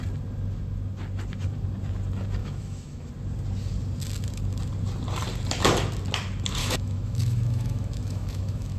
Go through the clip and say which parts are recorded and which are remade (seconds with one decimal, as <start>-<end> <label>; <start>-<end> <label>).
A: 0.0-2.4 recorded; 2.4-3.1 remade; 3.1-6.6 recorded; 6.6-8.8 remade